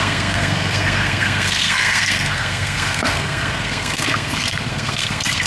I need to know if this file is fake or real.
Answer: fake